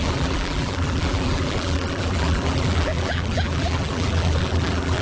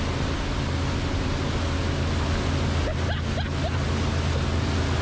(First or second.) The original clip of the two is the second